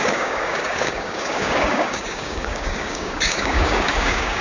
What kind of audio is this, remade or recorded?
remade